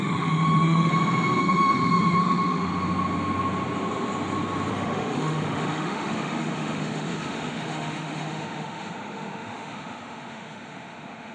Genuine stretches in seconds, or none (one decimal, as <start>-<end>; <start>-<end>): 0.9-1.4; 2.7-4.7